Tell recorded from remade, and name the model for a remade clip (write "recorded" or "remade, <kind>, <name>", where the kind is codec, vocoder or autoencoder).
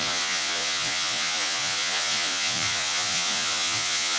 remade, vocoder, Vocos